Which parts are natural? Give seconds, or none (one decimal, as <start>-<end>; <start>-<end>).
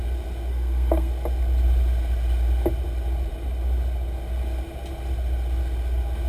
0.0-0.5; 1.1-6.3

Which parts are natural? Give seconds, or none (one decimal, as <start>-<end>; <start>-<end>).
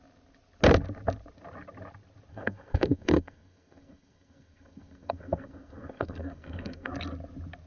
0.0-2.3; 6.9-7.7